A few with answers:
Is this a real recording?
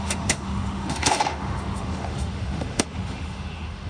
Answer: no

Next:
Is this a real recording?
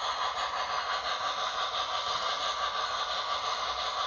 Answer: yes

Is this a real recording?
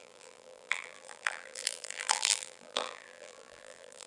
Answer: no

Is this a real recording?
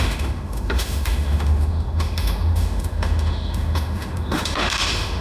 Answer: no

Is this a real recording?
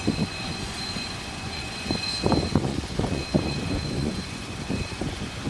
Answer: no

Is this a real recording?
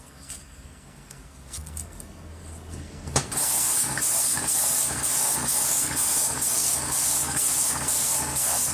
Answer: no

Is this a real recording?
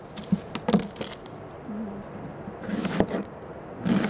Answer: yes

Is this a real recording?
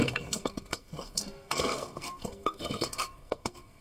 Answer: no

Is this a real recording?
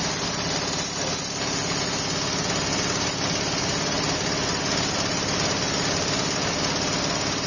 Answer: yes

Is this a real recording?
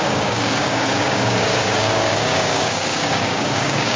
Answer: no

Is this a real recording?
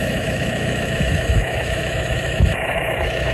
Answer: no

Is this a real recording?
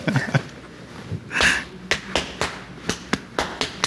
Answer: yes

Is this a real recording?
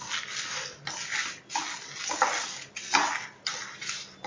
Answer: yes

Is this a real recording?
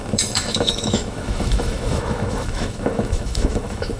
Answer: no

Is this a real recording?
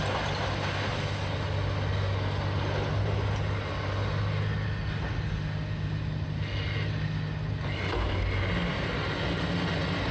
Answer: yes